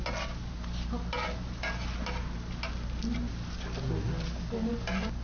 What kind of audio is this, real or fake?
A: real